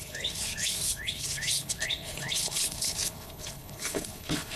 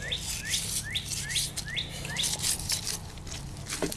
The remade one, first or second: first